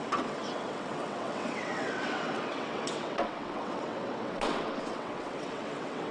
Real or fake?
fake